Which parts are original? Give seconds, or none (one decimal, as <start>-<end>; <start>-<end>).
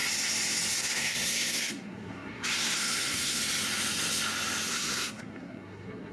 0.0-0.7; 3.4-4.7